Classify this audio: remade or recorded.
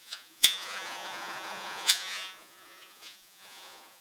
remade